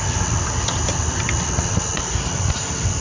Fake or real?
real